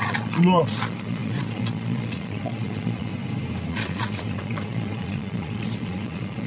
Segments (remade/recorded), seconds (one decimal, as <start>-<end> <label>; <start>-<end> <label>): 0.0-3.1 remade; 3.1-3.7 recorded; 3.7-6.5 remade